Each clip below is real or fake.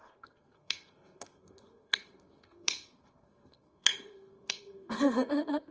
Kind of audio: fake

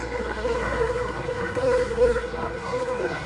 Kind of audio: fake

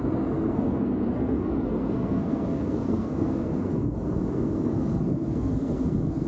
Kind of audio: fake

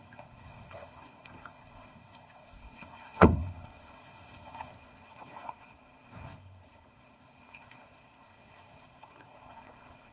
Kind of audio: fake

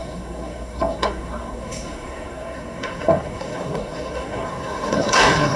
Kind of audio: fake